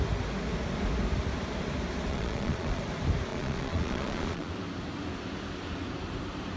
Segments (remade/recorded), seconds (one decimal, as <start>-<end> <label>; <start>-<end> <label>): 0.0-2.1 recorded; 2.1-2.8 remade; 2.8-3.3 recorded; 3.3-4.5 remade; 4.5-6.6 recorded